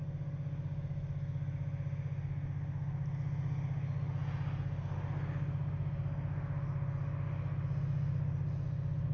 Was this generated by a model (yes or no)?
no